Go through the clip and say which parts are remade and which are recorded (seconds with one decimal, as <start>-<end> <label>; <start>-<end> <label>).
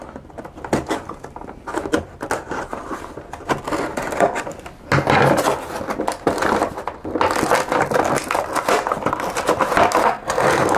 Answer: 0.0-10.0 recorded; 10.0-10.8 remade